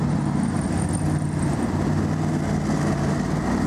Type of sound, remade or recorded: recorded